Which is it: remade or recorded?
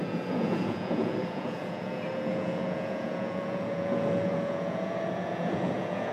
remade